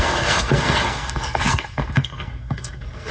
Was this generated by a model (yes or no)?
yes